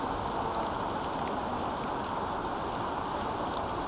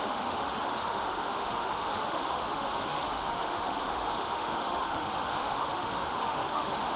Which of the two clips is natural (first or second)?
first